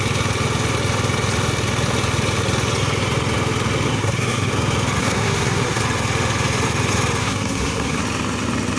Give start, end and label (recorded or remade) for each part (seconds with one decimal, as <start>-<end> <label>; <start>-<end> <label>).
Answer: 0.0-3.9 recorded; 3.9-4.5 remade; 4.5-5.0 recorded; 5.0-5.8 remade; 5.8-7.2 recorded; 7.2-8.0 remade; 8.0-8.8 recorded